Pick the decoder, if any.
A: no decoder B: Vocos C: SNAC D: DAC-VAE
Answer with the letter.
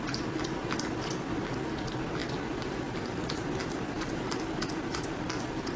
A